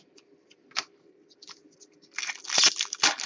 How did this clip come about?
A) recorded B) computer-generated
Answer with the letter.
A